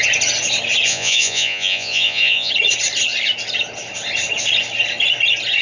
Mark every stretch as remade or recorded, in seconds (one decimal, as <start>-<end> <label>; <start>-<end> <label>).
0.0-0.9 recorded; 0.9-2.5 remade; 2.5-5.6 recorded